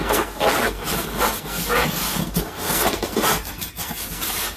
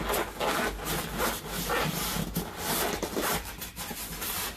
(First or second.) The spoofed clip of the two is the first